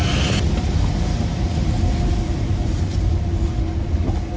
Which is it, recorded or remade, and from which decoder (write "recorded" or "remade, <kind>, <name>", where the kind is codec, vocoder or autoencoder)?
recorded